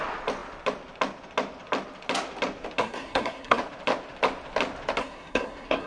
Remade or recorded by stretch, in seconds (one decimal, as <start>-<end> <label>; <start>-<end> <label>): 0.0-2.8 recorded; 2.8-3.6 remade; 3.6-5.0 recorded; 5.0-5.9 remade